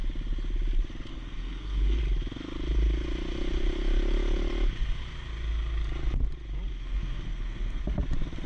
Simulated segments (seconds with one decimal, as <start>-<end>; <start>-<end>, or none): 1.1-2.0; 6.7-7.8